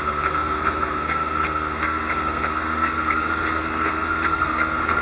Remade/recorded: remade